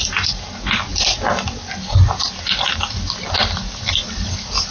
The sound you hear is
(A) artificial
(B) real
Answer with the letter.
B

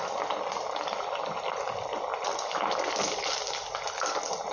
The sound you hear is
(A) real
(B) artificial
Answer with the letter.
A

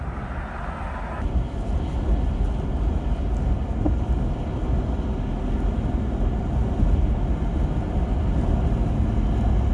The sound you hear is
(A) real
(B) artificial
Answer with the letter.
A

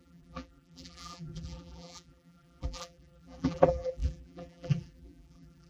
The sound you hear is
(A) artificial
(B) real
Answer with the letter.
A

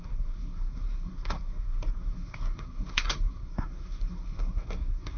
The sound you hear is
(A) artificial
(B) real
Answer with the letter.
A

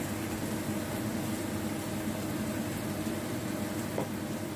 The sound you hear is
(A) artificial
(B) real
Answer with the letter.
B